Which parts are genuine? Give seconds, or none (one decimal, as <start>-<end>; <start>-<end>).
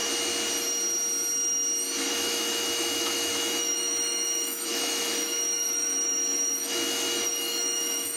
0.0-2.1